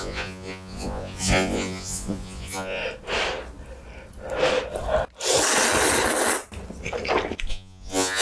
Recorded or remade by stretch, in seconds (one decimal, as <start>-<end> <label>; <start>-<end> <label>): 0.0-2.8 remade; 2.8-7.5 recorded; 7.5-8.2 remade